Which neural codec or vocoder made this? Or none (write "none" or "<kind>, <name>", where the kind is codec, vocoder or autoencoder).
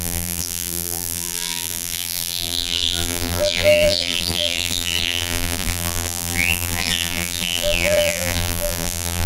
vocoder, BigVGAN v2